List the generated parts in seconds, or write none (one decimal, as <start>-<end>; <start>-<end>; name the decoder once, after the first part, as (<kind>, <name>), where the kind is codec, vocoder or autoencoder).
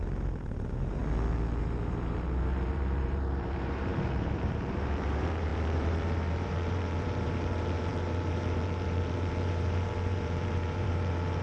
0.0-1.0 (vocoder, BigVGAN v2); 1.6-11.4